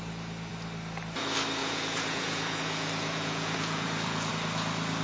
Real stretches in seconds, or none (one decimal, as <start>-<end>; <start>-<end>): 0.0-1.6; 4.3-5.0